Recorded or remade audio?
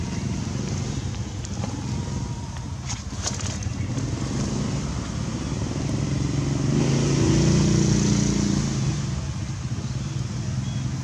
recorded